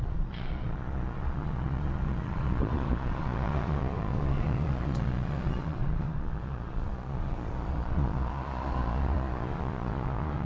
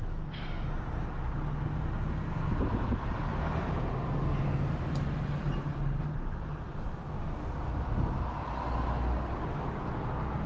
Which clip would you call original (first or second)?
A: second